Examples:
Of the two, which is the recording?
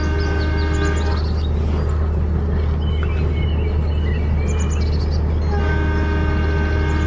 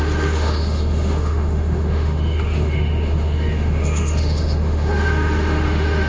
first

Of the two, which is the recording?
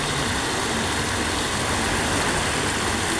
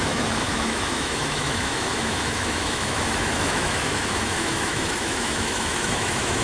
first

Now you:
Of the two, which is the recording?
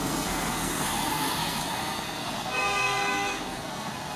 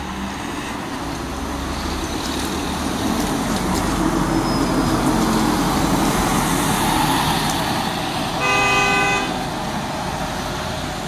second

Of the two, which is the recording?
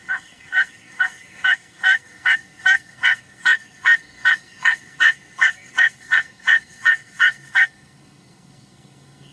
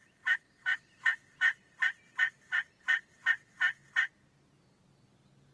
second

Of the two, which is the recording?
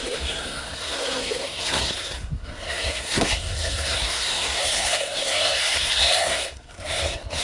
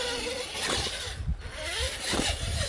second